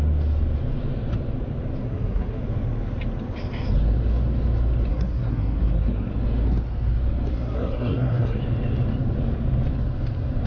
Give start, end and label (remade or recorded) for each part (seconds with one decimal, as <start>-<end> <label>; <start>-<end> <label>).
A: 0.0-1.8 recorded; 1.8-2.4 remade; 2.4-4.9 recorded; 4.9-6.1 remade; 6.1-7.3 recorded; 7.3-8.4 remade; 8.4-10.5 recorded